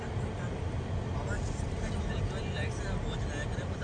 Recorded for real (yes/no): yes